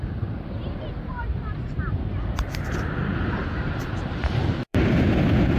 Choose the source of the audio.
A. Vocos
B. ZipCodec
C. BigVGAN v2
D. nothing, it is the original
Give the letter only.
C